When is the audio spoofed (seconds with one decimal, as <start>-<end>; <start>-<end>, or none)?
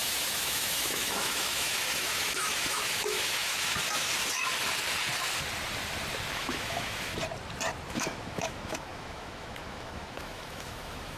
0.0-4.1; 6.3-7.1; 7.9-11.2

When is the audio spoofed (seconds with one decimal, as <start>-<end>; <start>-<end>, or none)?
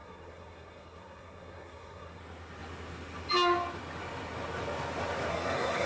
0.0-2.2; 5.3-5.9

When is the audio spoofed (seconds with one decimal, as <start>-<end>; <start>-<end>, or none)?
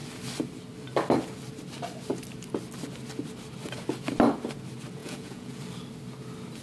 5.0-5.6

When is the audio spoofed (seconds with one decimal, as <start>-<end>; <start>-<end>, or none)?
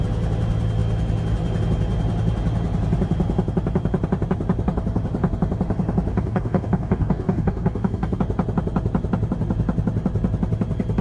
6.1-8.2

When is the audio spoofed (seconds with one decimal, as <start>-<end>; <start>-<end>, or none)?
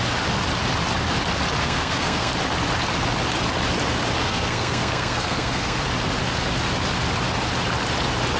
1.6-2.3; 4.2-5.8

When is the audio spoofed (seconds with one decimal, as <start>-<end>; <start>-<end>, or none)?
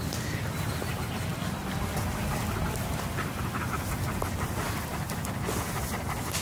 none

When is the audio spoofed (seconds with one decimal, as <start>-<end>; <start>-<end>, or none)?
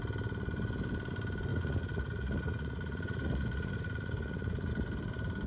1.5-4.7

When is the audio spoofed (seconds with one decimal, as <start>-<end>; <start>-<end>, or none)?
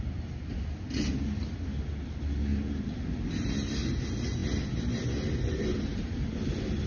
2.5-3.1; 5.9-6.9